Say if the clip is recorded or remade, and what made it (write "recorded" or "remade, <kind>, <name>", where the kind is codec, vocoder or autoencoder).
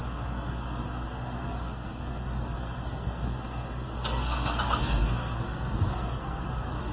remade, codec, SNAC